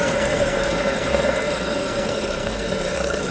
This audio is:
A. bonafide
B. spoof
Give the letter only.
B